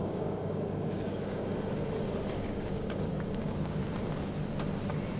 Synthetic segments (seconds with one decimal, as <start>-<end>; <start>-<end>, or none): 0.0-1.5; 2.4-3.8